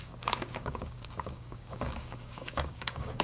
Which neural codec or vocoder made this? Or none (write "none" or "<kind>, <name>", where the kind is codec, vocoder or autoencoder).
codec, DAC